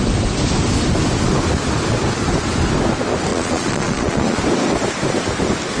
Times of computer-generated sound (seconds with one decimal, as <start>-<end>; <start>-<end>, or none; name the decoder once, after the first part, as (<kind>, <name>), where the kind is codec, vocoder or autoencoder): 3.3-4.4 (vocoder, Vocos)